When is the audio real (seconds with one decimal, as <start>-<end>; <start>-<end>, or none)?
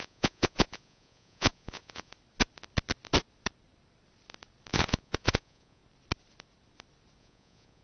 2.1-4.7; 5.8-7.2